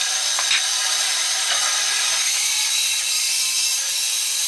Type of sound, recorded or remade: recorded